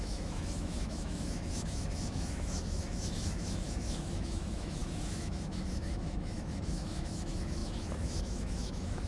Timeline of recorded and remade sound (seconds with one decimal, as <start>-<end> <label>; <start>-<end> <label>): 0.0-9.1 remade